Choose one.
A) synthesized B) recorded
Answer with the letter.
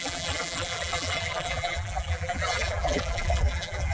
A